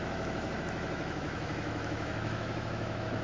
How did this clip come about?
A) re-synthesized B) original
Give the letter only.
A